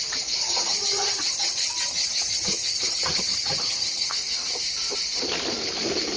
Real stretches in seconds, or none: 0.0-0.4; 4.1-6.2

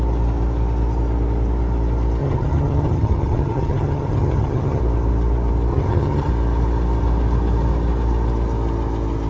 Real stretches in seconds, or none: 0.0-2.2; 4.8-5.7; 6.3-9.3

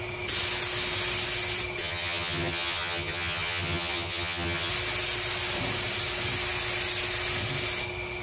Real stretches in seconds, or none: 0.0-1.8; 4.7-8.2

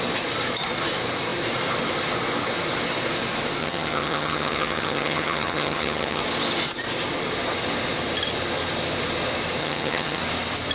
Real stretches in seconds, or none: 0.0-3.6; 6.2-9.6; 10.2-10.7

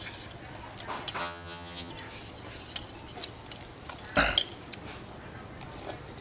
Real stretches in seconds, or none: 0.0-1.2; 1.9-6.2

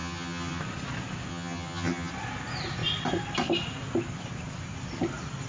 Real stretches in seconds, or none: 0.6-1.3; 2.1-5.5

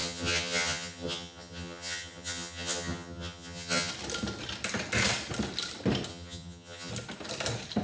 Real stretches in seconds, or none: 3.9-6.1; 6.9-7.8